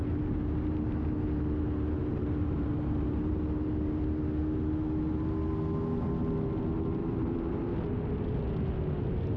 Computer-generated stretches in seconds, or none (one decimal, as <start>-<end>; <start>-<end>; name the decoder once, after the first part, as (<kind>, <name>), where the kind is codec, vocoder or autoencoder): 2.0-3.4 (vocoder, BigVGAN v2); 7.0-7.8